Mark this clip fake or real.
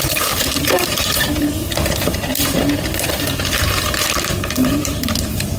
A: fake